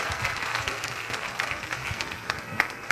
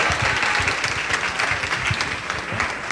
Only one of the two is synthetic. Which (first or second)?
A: first